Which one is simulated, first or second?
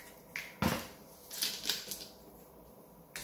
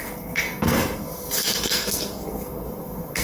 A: second